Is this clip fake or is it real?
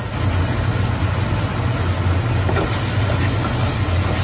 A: real